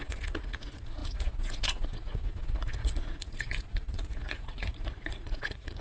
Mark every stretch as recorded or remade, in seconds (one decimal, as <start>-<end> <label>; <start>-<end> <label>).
0.0-5.8 remade